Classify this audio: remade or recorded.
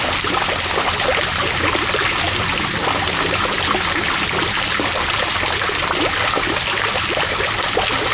recorded